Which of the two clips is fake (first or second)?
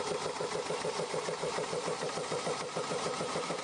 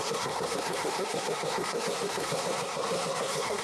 second